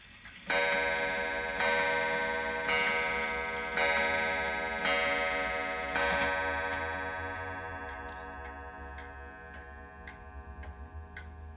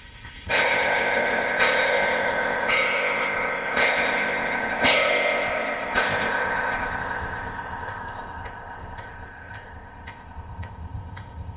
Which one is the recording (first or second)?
first